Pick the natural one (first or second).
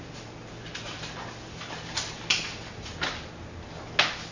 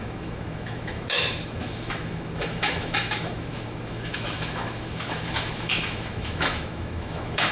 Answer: first